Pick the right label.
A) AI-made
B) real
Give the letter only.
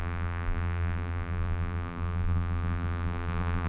A